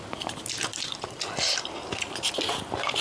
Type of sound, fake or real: real